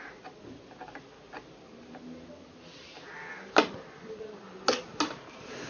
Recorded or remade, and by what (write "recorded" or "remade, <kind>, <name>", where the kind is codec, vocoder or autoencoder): recorded